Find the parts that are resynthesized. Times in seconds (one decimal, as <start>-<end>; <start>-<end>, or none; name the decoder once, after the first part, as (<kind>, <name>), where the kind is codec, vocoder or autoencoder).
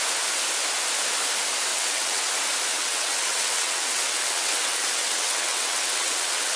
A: 1.7-2.3 (vocoder, WaveNeXt); 2.7-6.6